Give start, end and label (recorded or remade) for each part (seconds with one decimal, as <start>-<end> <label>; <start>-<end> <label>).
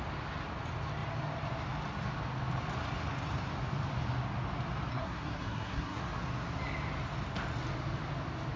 0.0-4.9 recorded; 4.9-6.0 remade; 6.0-8.6 recorded